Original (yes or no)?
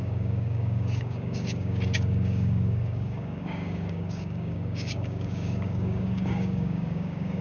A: no